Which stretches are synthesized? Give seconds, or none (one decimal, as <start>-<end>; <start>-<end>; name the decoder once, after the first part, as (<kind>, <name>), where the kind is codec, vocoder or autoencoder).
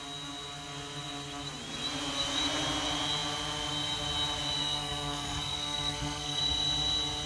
4.6-6.4 (codec, SNAC)